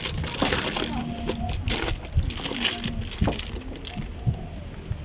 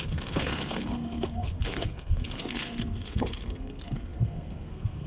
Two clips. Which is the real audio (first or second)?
first